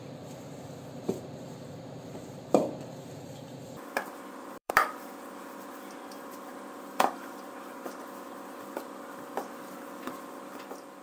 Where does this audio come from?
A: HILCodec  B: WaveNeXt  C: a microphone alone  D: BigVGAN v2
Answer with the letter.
D